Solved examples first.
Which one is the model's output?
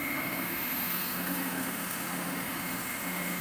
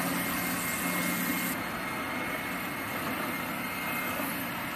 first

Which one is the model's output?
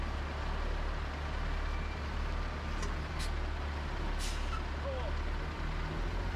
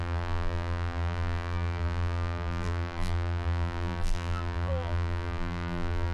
second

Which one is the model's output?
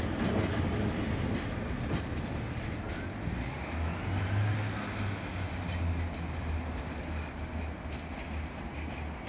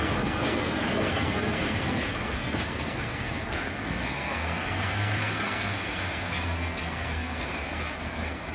second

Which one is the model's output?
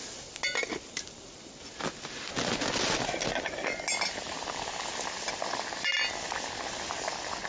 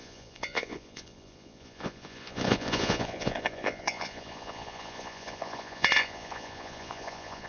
second